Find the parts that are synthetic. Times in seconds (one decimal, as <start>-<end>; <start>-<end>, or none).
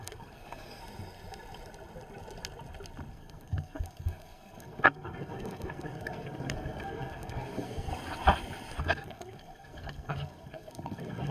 0.0-0.8; 3.1-7.9; 8.8-11.3